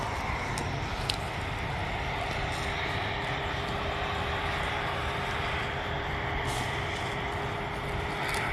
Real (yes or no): yes